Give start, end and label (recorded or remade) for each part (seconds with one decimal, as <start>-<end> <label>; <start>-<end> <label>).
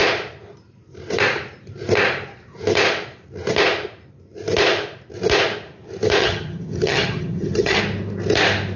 0.0-6.2 recorded; 6.2-7.8 remade; 7.8-8.8 recorded